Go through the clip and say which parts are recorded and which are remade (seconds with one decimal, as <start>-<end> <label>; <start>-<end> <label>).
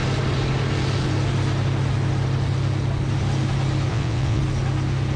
0.0-3.9 recorded; 3.9-4.4 remade; 4.4-5.2 recorded